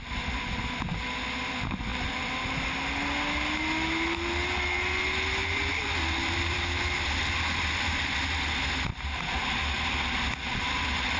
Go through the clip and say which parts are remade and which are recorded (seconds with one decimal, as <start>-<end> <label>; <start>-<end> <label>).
0.0-1.9 recorded; 1.9-2.4 remade; 2.4-5.4 recorded; 5.4-6.8 remade; 6.8-11.2 recorded